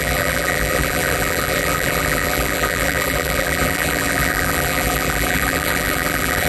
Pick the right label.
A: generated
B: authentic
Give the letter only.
A